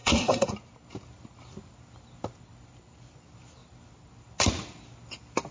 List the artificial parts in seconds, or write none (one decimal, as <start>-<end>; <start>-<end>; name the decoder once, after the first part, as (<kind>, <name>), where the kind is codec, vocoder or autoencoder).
0.0-0.5 (codec, SNAC)